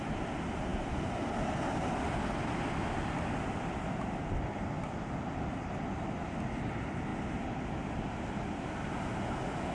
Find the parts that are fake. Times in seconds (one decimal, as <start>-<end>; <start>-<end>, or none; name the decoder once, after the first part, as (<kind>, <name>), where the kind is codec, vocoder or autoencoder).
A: none